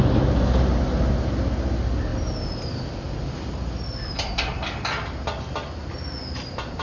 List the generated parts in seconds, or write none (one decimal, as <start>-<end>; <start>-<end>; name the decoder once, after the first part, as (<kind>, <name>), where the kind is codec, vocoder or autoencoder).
none